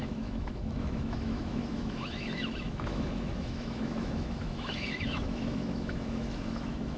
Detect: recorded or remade remade